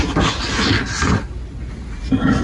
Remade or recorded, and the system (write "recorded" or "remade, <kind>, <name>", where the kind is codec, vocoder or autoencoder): recorded